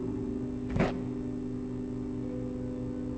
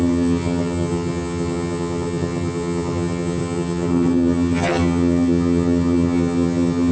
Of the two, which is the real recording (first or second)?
first